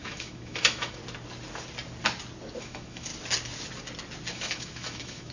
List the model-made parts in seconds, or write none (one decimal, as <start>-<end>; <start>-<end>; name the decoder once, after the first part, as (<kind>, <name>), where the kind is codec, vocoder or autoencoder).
0.0-1.0 (autoencoder, DAC-VAE); 2.6-3.1; 4.3-5.3